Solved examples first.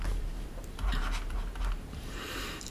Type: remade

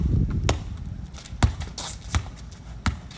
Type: recorded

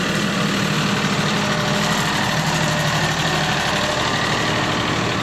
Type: recorded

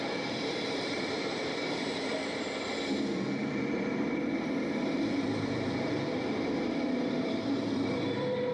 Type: remade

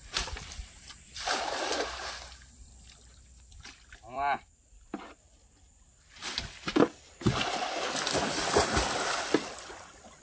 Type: remade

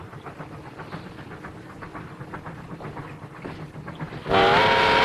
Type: recorded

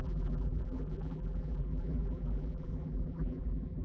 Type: remade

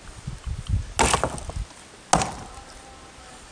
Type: recorded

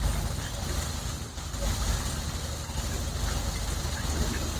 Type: recorded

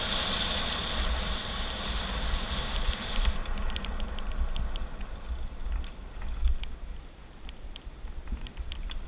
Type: recorded